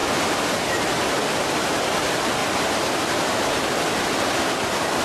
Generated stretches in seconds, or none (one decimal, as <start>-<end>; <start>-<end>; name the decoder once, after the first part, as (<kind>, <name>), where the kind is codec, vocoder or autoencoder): 2.4-3.8 (vocoder, BigVGAN v2)

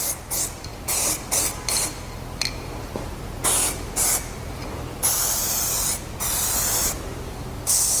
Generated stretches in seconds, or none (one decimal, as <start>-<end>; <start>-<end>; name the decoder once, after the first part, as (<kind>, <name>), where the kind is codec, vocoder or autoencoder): none

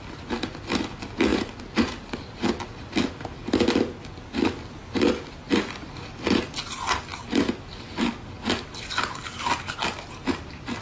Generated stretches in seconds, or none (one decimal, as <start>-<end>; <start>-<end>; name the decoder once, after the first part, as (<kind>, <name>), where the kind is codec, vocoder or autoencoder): 1.3-2.5 (vocoder, BigVGAN v2)

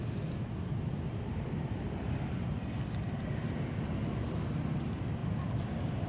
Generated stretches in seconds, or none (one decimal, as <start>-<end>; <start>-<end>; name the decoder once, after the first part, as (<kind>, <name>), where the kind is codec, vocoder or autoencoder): 0.0-5.2 (vocoder, BigVGAN v2)